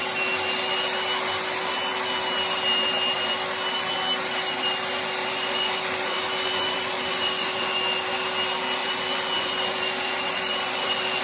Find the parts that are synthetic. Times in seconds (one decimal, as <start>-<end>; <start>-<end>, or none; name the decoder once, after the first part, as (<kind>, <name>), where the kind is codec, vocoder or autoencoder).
5.2-7.8 (vocoder, Vocos); 8.8-11.2